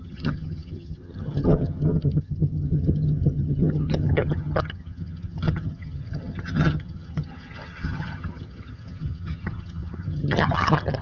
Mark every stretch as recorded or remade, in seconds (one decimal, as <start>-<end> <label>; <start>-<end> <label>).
0.0-11.0 remade